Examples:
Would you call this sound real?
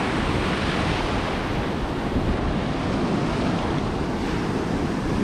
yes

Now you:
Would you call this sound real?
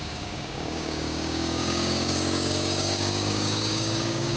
no